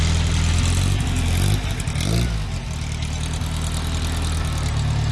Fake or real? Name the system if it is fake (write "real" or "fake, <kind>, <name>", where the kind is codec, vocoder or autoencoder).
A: real